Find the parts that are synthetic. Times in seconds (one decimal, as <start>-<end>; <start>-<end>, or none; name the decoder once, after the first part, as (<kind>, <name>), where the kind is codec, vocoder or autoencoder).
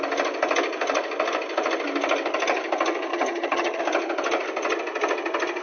3.1-3.8 (vocoder, HiFi-GAN)